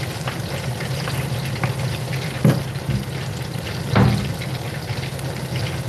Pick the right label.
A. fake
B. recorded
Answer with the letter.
B